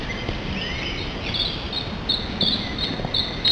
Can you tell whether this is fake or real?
real